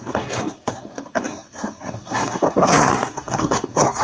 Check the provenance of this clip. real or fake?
fake